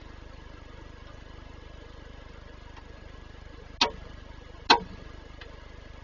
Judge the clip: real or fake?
real